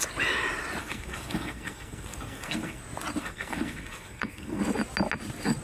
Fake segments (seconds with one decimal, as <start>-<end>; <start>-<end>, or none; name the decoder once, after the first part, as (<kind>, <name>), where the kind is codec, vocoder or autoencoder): 0.8-2.8 (codec, SNAC); 3.2-4.6